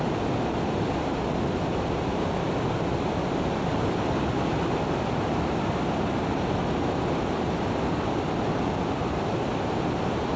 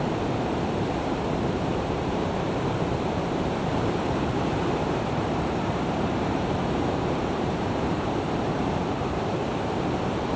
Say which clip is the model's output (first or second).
second